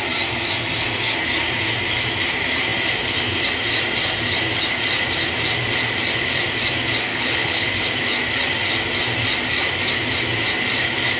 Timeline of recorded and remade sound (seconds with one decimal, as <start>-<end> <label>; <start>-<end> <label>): 0.0-7.1 recorded; 7.1-7.7 remade; 7.7-11.2 recorded